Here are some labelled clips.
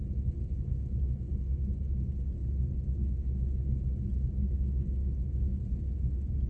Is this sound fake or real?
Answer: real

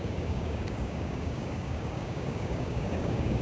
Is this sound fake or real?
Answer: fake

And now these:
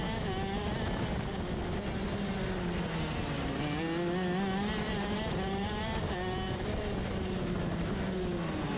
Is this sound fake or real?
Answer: real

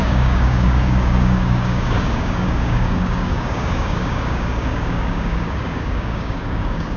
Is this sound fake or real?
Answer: fake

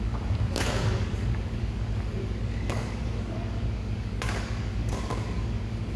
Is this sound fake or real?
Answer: fake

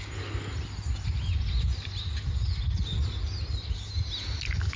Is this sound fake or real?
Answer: real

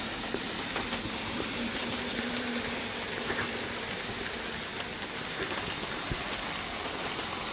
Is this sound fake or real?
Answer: real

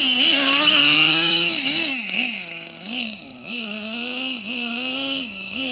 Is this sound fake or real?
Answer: fake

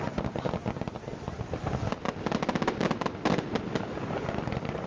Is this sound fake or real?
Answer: real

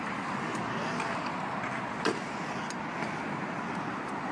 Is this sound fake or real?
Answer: real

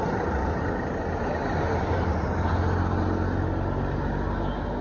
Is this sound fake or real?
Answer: real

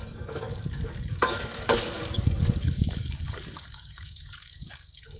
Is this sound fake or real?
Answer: fake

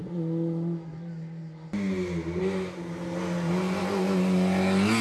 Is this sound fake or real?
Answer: real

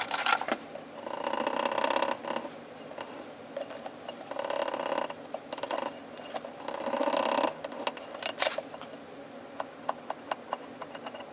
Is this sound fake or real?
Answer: real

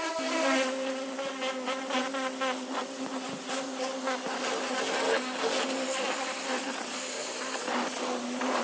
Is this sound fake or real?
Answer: real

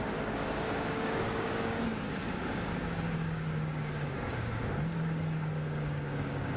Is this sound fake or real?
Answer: fake